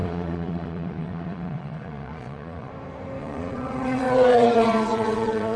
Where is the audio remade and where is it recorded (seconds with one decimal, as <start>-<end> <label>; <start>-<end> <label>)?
0.0-2.7 remade; 2.7-3.2 recorded; 3.2-5.6 remade